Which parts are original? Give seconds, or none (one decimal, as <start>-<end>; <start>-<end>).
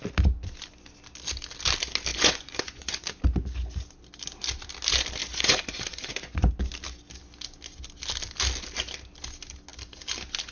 0.0-2.1; 3.2-5.2; 6.5-10.5